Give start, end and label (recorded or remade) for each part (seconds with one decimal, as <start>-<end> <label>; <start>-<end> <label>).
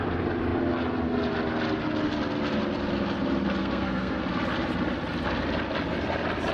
0.0-3.6 recorded; 3.6-4.2 remade; 4.2-6.5 recorded